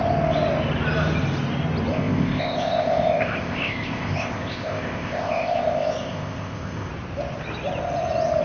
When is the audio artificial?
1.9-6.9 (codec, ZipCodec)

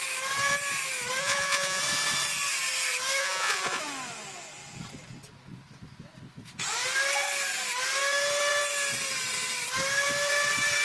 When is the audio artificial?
1.2-1.8 (vocoder, Vocos); 3.2-3.8

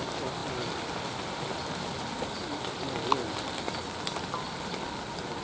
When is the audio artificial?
none